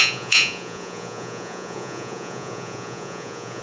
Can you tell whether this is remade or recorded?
remade